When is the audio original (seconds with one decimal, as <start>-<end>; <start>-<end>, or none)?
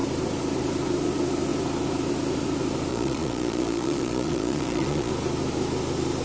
0.0-2.9; 5.1-6.2